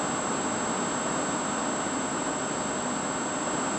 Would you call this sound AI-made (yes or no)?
no